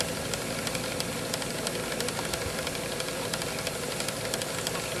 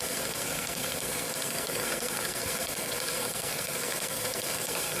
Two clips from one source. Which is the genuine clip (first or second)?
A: first